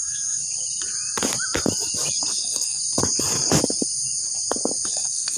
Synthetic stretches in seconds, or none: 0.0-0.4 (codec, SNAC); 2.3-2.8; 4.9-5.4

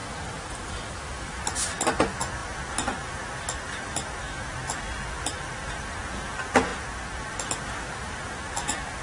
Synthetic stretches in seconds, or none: none

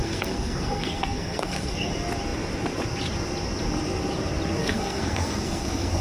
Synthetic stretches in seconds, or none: 0.0-1.9 (codec, SNAC); 4.6-6.0

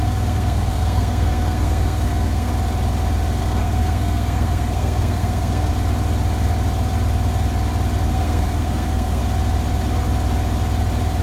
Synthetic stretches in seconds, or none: 0.0-2.5 (codec, SNAC); 3.4-5.7; 8.1-9.2

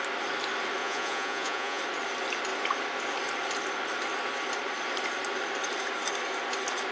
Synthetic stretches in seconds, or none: 0.8-1.8 (vocoder, Vocos)

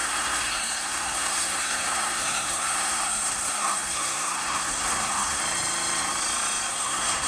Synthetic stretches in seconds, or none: 0.0-5.4 (codec, SNAC); 6.7-7.3

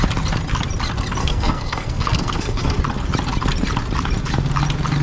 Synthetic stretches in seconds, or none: 1.2-2.8 (codec, SNAC)